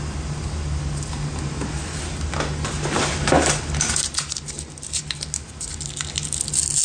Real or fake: real